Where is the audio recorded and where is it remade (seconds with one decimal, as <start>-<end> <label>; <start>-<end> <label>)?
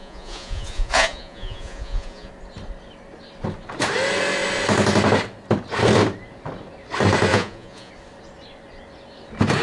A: 0.0-2.3 remade; 2.3-7.3 recorded; 7.3-7.9 remade; 7.9-9.6 recorded